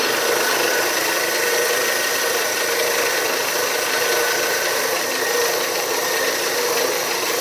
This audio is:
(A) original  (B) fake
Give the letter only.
B